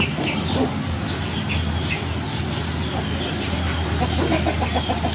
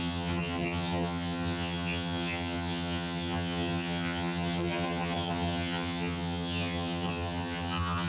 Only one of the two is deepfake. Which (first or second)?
second